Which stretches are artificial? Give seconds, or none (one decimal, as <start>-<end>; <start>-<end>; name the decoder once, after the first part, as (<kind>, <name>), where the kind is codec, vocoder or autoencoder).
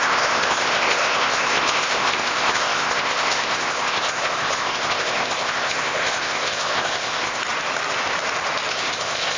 0.0-7.4 (codec, ZipCodec); 8.7-9.4